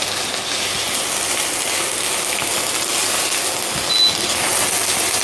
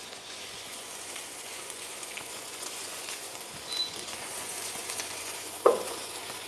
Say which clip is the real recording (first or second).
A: first